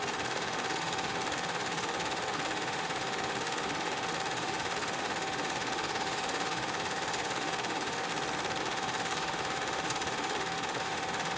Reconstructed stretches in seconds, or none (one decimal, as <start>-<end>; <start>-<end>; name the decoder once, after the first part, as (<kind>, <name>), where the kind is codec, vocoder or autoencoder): 0.0-8.1 (autoencoder, DAC-VAE); 8.6-11.4